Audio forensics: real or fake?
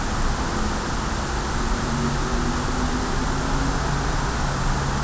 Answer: real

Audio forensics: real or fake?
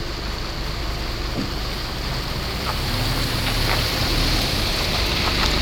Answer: real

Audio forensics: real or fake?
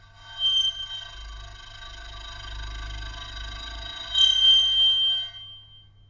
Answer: real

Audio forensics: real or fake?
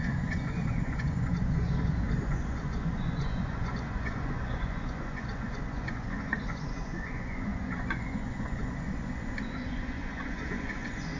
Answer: fake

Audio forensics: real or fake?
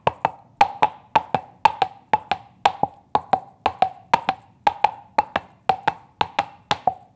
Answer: real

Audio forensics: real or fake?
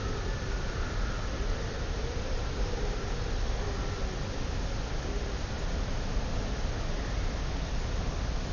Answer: real